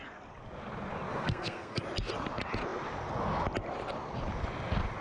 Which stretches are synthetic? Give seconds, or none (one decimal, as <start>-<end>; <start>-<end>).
1.1-1.8